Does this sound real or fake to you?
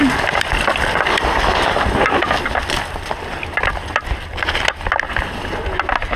real